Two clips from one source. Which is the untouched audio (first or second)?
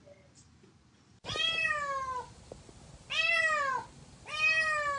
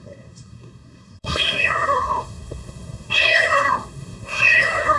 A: first